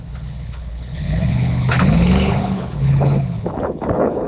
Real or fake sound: fake